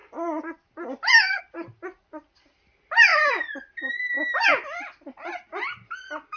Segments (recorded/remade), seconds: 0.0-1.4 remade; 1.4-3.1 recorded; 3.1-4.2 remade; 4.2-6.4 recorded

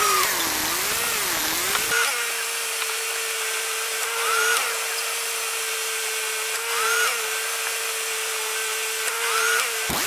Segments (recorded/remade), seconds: 0.0-10.1 recorded

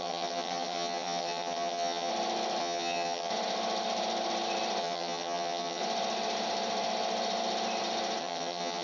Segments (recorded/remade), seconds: 0.0-2.1 remade; 2.1-2.6 recorded; 2.6-3.3 remade; 3.3-4.8 recorded; 4.8-5.8 remade; 5.8-8.2 recorded; 8.2-8.8 remade